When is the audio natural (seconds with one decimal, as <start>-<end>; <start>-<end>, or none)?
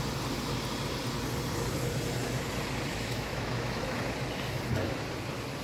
0.0-2.9; 4.0-5.6